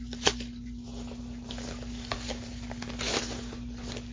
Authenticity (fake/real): real